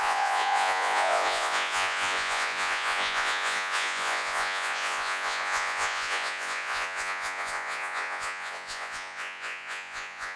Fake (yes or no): yes